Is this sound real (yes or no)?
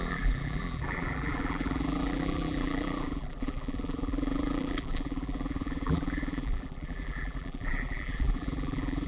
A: no